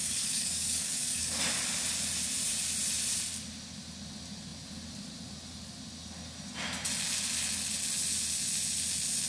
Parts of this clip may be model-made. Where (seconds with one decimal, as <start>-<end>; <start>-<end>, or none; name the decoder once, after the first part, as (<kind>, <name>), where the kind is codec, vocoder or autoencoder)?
0.0-1.4 (codec, DAC)